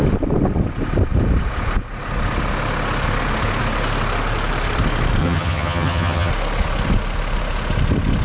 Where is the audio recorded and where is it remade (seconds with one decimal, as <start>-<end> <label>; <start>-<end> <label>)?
0.0-5.2 recorded; 5.2-6.3 remade; 6.3-8.2 recorded